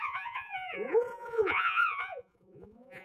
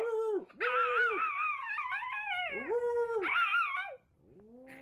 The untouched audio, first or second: second